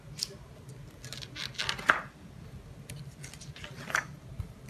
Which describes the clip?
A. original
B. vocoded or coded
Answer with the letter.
A